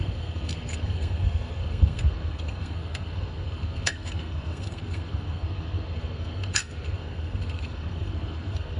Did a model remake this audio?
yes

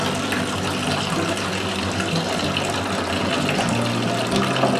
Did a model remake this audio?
no